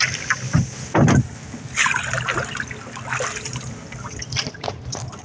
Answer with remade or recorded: recorded